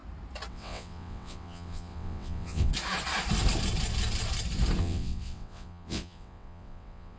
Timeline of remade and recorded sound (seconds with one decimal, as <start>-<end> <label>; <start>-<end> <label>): 0.0-0.5 recorded; 0.5-2.7 remade; 2.7-4.8 recorded; 4.8-7.2 remade